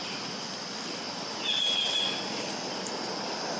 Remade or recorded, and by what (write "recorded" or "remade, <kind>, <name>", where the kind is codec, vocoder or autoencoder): recorded